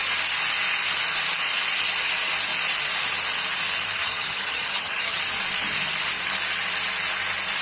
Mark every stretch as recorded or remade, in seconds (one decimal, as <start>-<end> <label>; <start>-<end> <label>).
0.0-4.0 recorded; 4.0-5.2 remade; 5.2-7.6 recorded